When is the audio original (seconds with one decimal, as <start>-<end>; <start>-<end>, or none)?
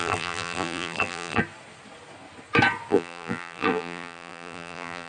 1.4-2.9